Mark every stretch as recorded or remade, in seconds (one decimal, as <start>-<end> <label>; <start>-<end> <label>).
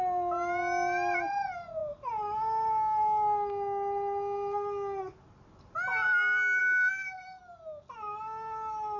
0.0-9.0 recorded